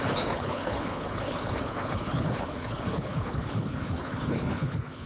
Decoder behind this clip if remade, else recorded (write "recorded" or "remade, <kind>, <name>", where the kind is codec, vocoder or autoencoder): remade, codec, HILCodec